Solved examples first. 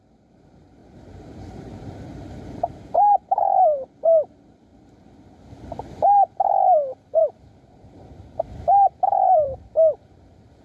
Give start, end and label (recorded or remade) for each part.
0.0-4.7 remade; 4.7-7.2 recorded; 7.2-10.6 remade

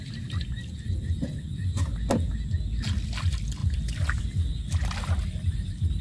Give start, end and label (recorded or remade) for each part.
0.0-6.0 recorded